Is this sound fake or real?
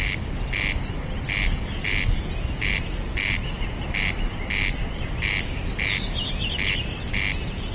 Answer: real